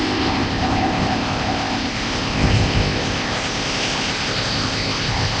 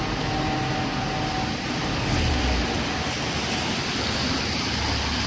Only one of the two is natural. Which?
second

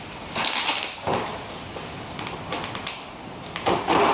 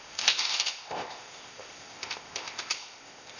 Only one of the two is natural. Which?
first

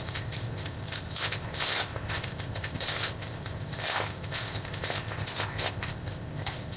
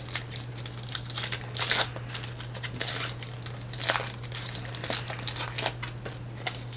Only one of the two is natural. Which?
second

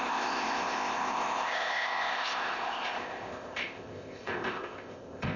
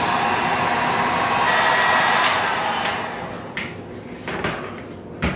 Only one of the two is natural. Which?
second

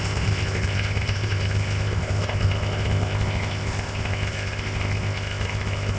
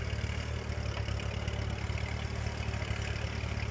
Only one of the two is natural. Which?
second